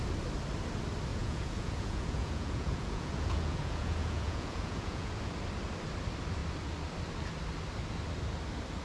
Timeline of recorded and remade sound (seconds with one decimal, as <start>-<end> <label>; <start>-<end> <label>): 0.0-1.1 recorded; 1.1-5.1 remade; 5.1-8.8 recorded